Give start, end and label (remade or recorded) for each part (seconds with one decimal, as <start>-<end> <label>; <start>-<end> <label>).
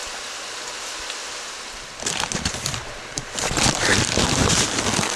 0.0-5.2 recorded